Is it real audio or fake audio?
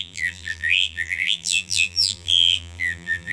fake